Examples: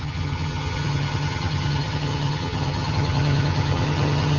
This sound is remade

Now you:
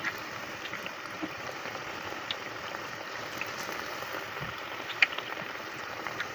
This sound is remade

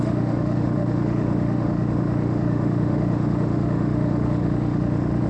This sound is remade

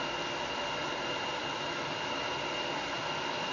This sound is recorded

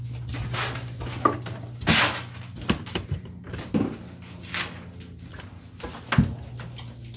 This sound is recorded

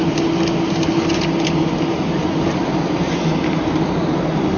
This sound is recorded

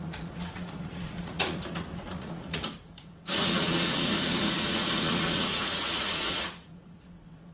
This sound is remade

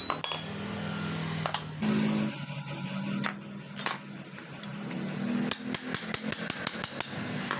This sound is recorded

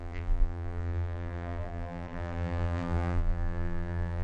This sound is remade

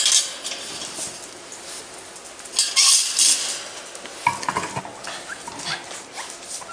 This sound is recorded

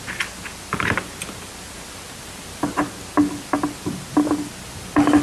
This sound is recorded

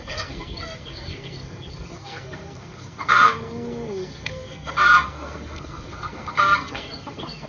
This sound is remade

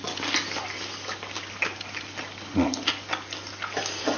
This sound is recorded